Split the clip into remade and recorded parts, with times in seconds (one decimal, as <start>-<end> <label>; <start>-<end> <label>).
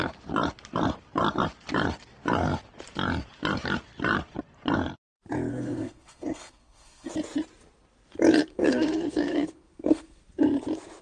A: 0.0-5.5 recorded; 5.5-7.1 remade; 7.1-8.5 recorded; 8.5-10.2 remade; 10.2-11.0 recorded